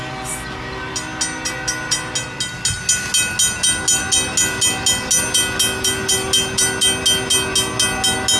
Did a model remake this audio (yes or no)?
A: no